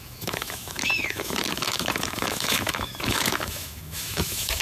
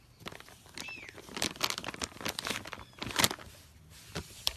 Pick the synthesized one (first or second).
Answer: first